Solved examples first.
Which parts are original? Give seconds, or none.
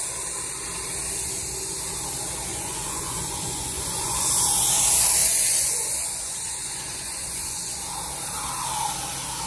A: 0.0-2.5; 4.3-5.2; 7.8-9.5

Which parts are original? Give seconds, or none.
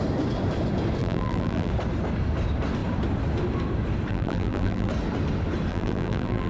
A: 0.0-1.0; 1.7-4.1; 4.9-5.7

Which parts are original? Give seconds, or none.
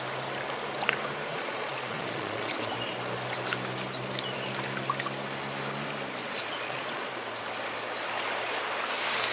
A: 0.0-1.3; 2.7-6.2; 7.1-9.3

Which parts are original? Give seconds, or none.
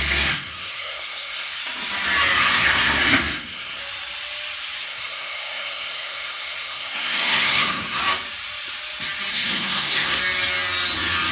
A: 1.6-2.4; 3.8-4.8; 8.0-9.3; 10.2-11.3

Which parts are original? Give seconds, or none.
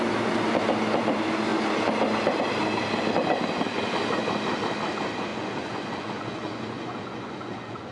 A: 0.0-5.3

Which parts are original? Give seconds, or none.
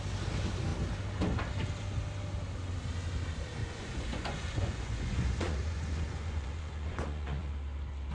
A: 0.0-3.6; 7.5-8.1